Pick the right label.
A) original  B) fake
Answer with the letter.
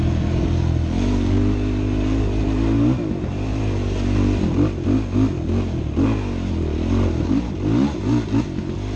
A